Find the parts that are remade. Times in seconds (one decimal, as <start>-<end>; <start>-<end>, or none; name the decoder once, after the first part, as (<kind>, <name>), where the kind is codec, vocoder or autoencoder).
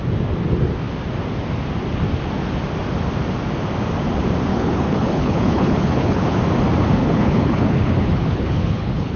4.5-6.4 (codec, HILCodec); 7.0-9.2